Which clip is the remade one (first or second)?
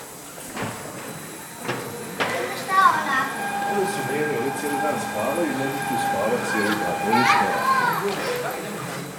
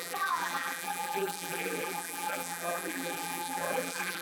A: second